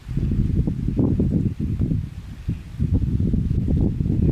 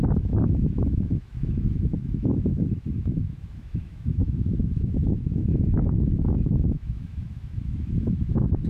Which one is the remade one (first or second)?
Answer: second